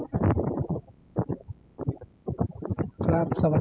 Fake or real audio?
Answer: fake